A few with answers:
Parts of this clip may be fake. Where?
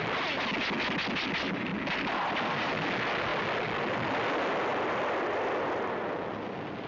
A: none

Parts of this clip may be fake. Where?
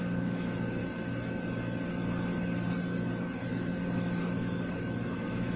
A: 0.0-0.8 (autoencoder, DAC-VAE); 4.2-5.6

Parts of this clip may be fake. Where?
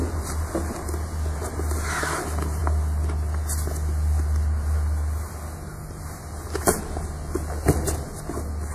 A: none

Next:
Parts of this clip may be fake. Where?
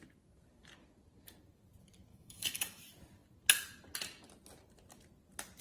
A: 2.1-2.8 (autoencoder, DAC-VAE)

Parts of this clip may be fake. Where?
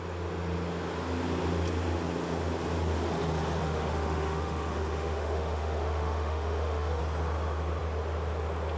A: 3.6-7.0 (autoencoder, DAC-VAE)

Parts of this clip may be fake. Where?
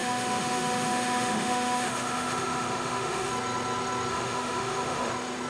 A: 0.0-3.3 (autoencoder, DAC-VAE); 4.1-5.1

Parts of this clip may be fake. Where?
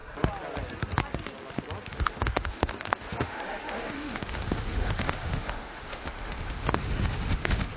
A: 1.9-7.8 (autoencoder, DAC-VAE)